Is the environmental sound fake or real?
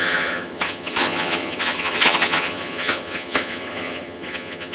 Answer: fake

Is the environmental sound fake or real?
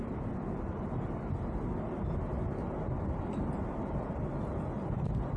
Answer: real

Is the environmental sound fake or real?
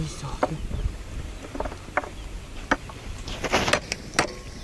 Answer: real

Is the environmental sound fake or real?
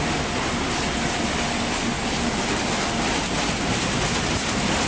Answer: real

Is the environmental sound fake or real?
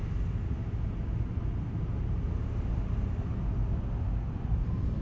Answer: real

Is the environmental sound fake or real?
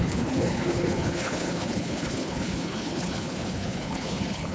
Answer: fake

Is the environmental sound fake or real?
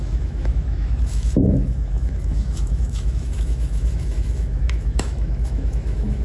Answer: fake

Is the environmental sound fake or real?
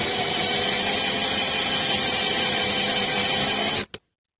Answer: real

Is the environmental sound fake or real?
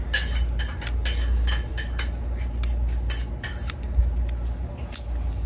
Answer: real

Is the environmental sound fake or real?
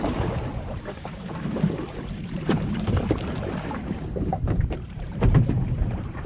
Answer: fake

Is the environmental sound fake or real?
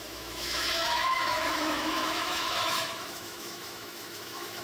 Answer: fake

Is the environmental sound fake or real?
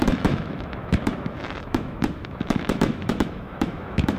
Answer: fake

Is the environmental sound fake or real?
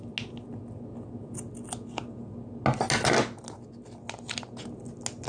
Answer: real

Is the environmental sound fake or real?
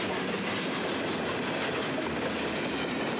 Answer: real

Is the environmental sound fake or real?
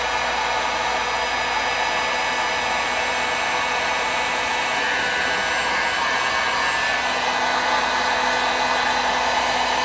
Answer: real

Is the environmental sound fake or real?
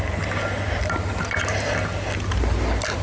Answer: real